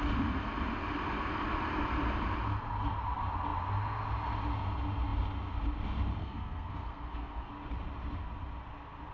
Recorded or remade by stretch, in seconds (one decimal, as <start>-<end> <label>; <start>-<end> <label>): 0.0-6.2 recorded; 6.2-7.5 remade; 7.5-9.1 recorded